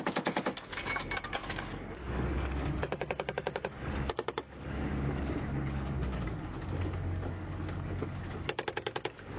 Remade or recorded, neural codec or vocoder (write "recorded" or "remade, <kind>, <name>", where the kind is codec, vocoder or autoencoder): remade, codec, DAC